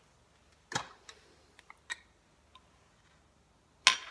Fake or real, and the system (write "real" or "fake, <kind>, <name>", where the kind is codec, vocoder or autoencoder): real